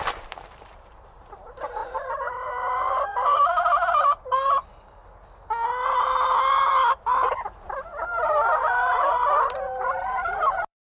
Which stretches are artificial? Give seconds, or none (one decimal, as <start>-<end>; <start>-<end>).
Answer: 0.0-5.0; 5.9-10.8